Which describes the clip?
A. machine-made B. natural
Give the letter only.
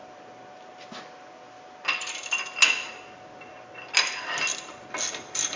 B